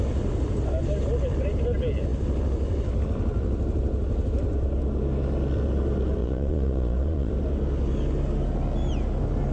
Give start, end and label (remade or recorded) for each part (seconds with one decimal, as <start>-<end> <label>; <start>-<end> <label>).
0.0-6.2 recorded; 6.2-7.3 remade; 7.3-9.5 recorded